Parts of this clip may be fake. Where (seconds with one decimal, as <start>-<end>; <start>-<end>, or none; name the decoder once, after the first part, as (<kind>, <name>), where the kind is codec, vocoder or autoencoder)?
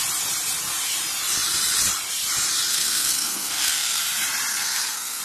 2.7-4.0 (codec, SNAC); 4.5-5.2